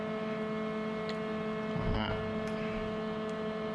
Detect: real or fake real